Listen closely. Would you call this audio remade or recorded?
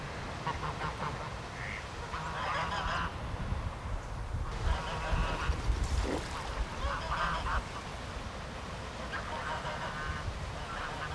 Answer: recorded